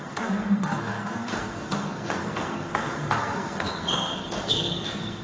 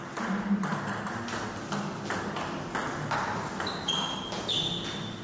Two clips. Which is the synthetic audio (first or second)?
first